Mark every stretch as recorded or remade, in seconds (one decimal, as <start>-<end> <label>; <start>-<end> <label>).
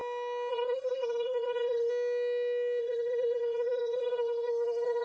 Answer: 0.0-0.5 recorded; 0.5-1.9 remade; 1.9-2.8 recorded; 2.8-5.0 remade